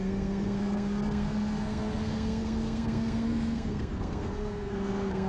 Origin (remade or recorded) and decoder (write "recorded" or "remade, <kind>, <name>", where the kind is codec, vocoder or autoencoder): remade, codec, SNAC